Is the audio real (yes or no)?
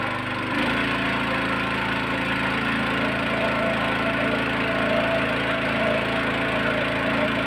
yes